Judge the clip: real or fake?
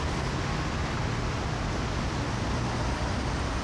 real